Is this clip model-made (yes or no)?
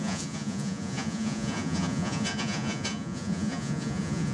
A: yes